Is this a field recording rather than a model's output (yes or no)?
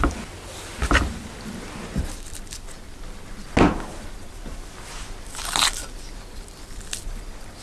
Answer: yes